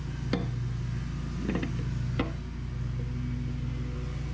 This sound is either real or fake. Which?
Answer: real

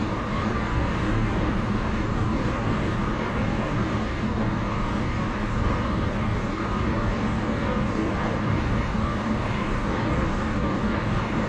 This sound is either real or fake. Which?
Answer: fake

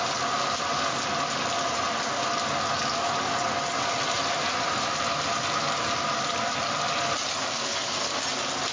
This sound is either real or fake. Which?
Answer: real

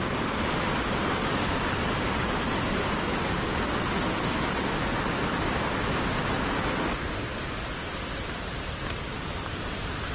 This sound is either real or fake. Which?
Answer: real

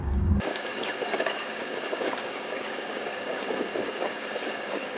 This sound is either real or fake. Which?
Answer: fake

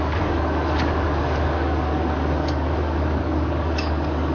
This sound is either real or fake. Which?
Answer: fake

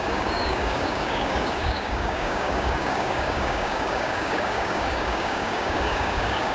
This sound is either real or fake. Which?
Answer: fake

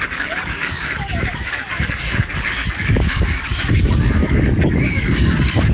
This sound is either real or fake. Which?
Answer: fake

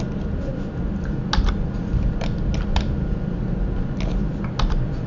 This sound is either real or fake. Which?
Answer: real